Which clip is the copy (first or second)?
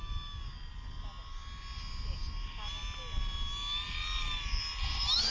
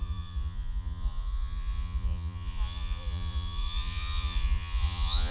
second